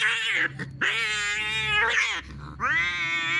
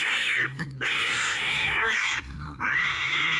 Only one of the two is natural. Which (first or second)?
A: first